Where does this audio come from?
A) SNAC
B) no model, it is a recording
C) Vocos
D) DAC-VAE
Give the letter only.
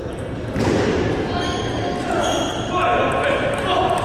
B